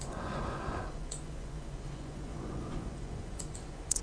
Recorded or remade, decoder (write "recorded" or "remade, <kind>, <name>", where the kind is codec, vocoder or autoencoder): remade, vocoder, Vocos